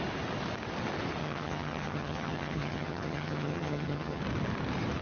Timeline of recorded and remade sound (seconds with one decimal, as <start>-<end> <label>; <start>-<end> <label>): 0.0-1.2 recorded; 1.2-4.2 remade; 4.2-5.0 recorded

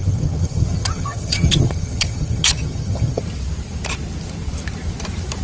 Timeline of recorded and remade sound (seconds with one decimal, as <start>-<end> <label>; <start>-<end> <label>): 0.0-3.2 remade; 3.2-5.4 recorded